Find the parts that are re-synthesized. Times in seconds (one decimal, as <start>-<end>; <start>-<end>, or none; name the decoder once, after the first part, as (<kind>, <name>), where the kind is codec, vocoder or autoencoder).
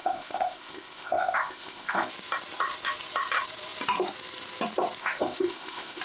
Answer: 0.0-2.1 (codec, ZipCodec); 5.0-6.0